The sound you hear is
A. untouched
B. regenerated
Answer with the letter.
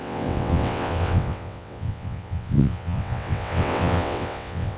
B